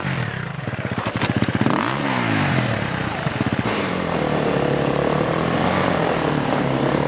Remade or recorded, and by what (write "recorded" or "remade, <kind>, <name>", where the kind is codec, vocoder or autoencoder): remade, vocoder, BigVGAN v2